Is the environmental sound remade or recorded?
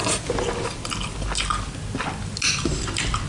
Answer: recorded